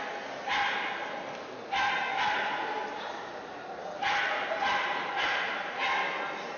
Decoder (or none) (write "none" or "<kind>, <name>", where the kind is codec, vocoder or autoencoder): none